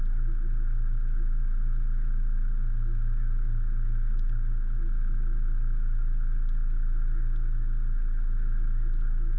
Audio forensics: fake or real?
real